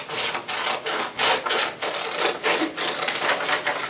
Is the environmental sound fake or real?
real